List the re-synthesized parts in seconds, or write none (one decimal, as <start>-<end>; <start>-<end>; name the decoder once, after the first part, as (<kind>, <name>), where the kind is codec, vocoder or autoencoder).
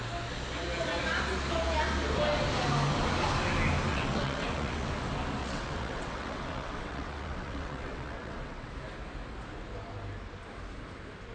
3.9-4.9 (vocoder, WaveNeXt); 5.4-8.7